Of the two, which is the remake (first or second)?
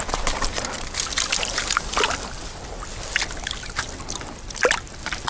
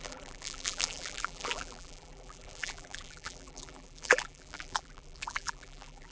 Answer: second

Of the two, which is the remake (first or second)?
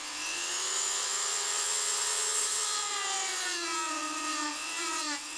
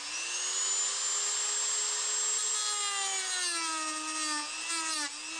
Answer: first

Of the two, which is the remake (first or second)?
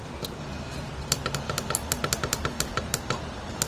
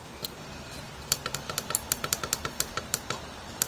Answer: second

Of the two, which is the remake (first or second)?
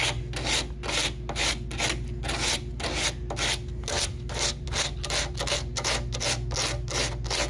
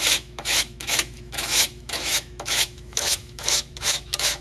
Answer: second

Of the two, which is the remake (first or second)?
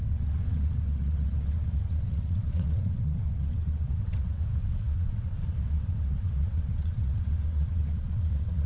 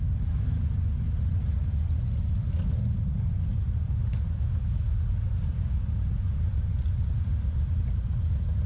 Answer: first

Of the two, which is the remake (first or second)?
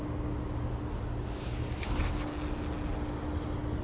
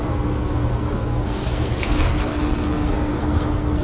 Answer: second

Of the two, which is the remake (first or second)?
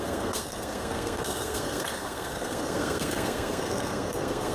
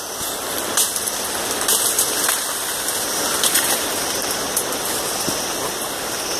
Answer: first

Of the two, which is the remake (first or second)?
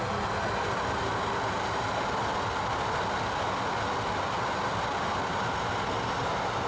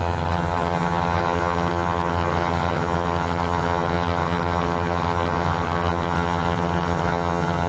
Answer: second